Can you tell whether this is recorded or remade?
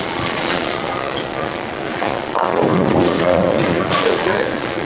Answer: remade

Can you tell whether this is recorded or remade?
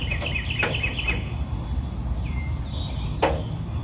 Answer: recorded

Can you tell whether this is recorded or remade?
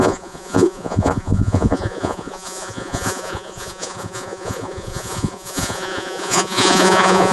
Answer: remade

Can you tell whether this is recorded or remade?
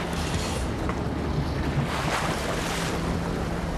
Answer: recorded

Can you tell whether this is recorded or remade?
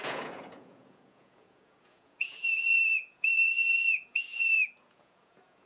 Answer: remade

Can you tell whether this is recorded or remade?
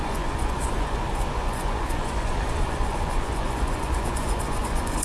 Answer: remade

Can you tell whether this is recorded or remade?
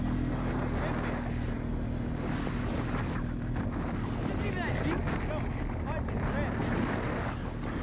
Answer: recorded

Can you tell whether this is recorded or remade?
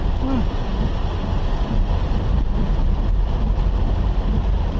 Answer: recorded